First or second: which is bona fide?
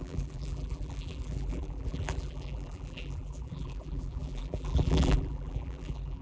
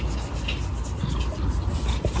second